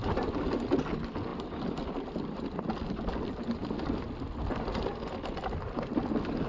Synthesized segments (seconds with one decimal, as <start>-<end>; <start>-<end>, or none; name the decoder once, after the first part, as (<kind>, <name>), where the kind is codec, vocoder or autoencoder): none